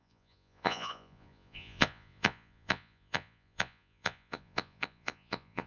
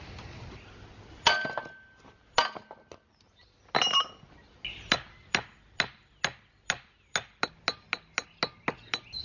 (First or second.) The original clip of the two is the second